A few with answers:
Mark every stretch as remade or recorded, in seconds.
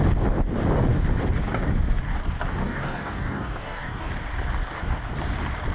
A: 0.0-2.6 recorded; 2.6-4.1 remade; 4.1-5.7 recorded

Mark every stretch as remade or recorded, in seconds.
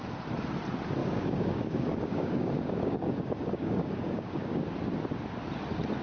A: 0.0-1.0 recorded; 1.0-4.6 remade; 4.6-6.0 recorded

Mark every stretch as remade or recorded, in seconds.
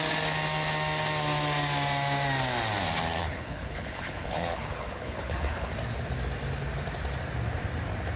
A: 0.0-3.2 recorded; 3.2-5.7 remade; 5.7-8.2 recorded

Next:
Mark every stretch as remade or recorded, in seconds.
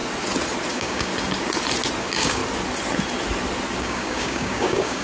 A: 0.0-0.7 recorded; 0.7-1.1 remade; 1.1-2.0 recorded; 2.0-2.4 remade; 2.4-3.8 recorded; 3.8-5.0 remade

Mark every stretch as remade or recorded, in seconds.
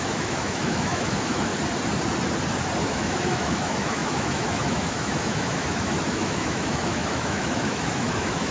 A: 0.0-1.5 remade; 1.5-2.8 recorded; 2.8-8.5 remade